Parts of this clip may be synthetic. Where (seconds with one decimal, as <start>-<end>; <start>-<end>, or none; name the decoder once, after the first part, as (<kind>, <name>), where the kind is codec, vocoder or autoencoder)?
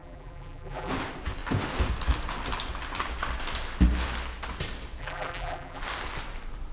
0.0-0.9 (vocoder, BigVGAN v2); 5.0-5.8